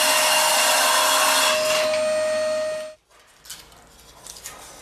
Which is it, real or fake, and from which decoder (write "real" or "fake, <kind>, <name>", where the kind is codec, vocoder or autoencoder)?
real